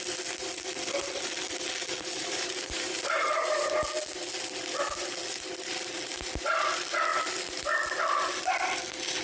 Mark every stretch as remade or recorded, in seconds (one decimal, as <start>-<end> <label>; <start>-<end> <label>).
0.0-2.2 recorded; 2.2-3.8 remade; 3.8-9.2 recorded